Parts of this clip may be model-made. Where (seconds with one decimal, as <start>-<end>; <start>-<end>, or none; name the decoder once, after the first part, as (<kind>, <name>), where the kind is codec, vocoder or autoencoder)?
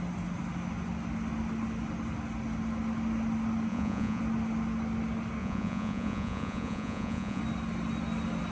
3.7-4.2 (vocoder, Vocos); 5.4-7.4